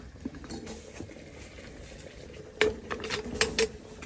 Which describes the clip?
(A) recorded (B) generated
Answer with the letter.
A